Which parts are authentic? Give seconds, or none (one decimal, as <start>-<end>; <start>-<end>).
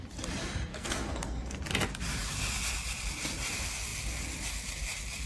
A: 0.0-0.7; 1.6-5.3